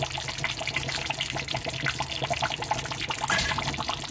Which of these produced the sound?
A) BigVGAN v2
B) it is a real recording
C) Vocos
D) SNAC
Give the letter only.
B